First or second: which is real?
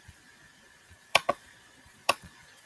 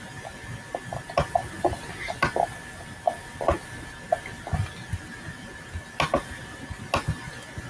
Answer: second